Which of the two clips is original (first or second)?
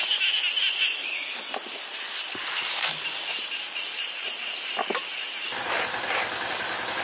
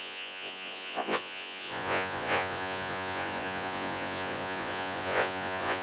first